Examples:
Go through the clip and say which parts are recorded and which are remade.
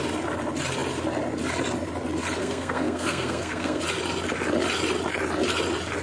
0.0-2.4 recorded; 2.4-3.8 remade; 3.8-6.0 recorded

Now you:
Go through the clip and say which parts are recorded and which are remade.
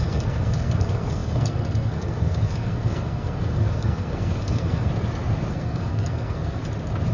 0.0-4.9 remade; 4.9-5.5 recorded; 5.5-6.6 remade; 6.6-7.1 recorded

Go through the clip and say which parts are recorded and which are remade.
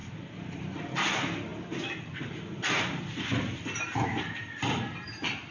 0.0-5.5 recorded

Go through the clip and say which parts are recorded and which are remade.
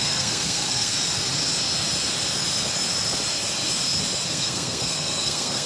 0.0-0.9 remade; 0.9-4.3 recorded; 4.3-5.7 remade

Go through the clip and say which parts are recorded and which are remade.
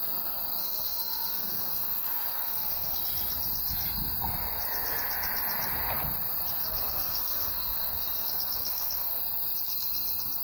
0.0-0.6 recorded; 0.6-3.0 remade; 3.0-6.6 recorded; 6.6-9.2 remade; 9.2-10.4 recorded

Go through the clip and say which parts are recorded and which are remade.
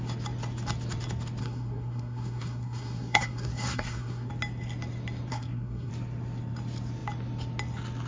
0.0-1.4 recorded; 1.4-4.3 remade; 4.3-5.3 recorded; 5.3-5.9 remade; 5.9-8.1 recorded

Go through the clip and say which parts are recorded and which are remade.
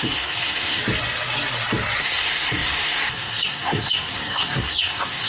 0.0-0.8 remade; 0.8-2.0 recorded; 2.0-5.3 remade